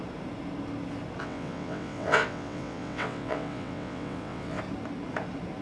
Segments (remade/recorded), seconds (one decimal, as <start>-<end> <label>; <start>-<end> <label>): 0.0-1.2 recorded; 1.2-4.6 remade; 4.6-5.6 recorded